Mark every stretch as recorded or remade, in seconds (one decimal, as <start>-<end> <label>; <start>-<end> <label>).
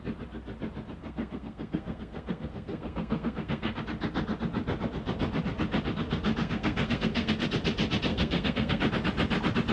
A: 0.0-1.0 recorded; 1.0-3.8 remade; 3.8-6.4 recorded; 6.4-7.3 remade; 7.3-8.1 recorded; 8.1-8.8 remade; 8.8-9.7 recorded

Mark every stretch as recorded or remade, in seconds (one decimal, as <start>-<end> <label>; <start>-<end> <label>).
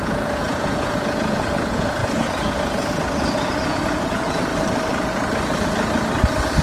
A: 0.0-4.5 remade; 4.5-6.6 recorded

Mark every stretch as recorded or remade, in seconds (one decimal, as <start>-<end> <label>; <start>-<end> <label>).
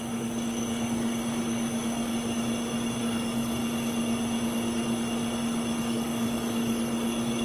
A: 0.0-2.1 remade; 2.1-3.0 recorded; 3.0-3.6 remade; 3.6-5.8 recorded; 5.8-7.4 remade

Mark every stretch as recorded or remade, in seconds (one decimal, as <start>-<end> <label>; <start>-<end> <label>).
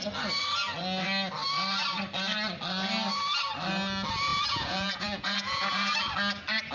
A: 0.0-4.3 recorded; 4.3-6.0 remade; 6.0-6.7 recorded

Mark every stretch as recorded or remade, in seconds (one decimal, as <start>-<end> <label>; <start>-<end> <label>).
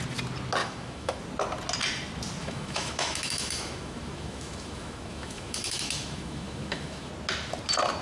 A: 0.0-0.6 recorded; 0.6-1.2 remade; 1.2-2.4 recorded; 2.4-7.1 remade; 7.1-8.0 recorded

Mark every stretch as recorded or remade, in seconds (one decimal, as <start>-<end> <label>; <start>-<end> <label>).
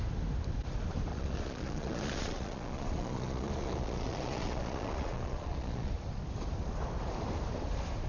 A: 0.0-1.1 recorded; 1.1-5.9 remade; 5.9-8.1 recorded